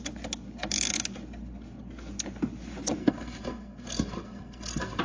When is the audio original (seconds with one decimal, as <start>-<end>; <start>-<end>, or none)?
0.0-3.0